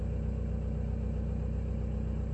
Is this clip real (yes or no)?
yes